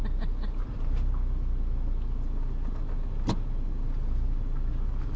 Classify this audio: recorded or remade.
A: recorded